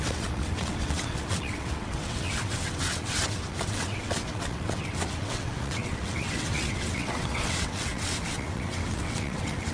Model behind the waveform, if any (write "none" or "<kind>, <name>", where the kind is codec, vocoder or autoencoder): vocoder, WaveNeXt